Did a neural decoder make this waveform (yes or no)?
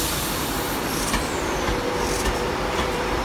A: yes